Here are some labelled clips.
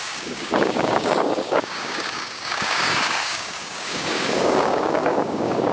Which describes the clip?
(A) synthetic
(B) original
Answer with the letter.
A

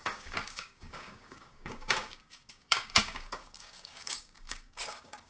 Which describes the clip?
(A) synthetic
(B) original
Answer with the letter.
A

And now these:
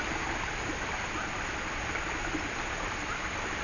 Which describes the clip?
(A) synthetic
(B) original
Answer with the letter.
B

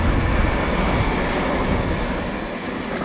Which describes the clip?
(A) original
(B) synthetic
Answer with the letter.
A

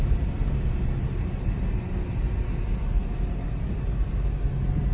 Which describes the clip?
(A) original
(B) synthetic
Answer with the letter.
A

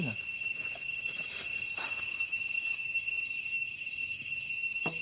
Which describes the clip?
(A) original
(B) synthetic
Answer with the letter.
B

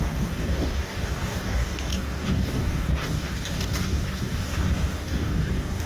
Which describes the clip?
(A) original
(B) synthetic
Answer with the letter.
B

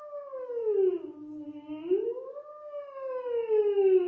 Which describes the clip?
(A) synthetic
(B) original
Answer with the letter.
B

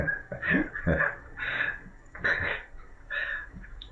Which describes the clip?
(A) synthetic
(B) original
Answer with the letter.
A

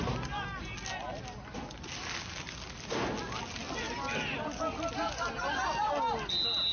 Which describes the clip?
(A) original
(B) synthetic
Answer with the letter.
A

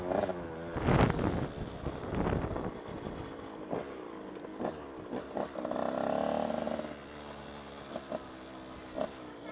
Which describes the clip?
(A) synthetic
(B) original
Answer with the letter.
B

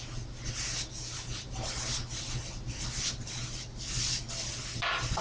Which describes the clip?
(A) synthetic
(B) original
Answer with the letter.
B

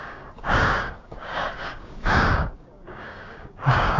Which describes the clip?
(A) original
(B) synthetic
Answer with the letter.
B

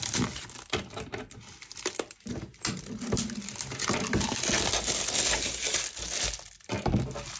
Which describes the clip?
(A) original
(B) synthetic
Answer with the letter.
A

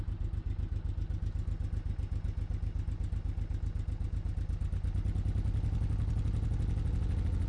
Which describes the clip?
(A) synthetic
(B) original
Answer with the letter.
B